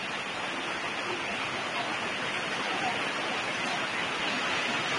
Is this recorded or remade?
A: recorded